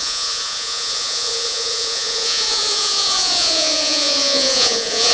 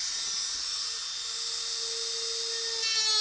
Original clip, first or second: second